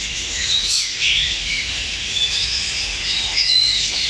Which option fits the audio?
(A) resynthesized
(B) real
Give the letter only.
A